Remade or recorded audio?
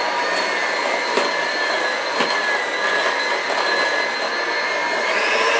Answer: recorded